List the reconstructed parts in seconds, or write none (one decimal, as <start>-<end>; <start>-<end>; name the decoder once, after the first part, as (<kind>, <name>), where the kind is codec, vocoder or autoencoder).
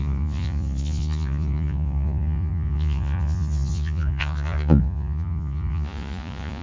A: 0.0-6.6 (vocoder, Vocos)